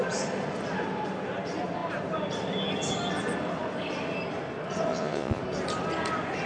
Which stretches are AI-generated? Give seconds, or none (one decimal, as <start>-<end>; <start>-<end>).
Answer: 4.9-5.4